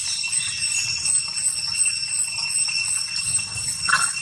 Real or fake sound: real